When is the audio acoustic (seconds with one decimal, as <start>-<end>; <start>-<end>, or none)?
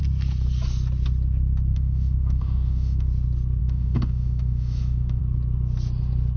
0.0-1.7; 3.1-3.6; 5.2-6.4